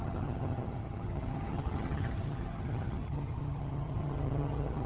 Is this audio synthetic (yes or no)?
yes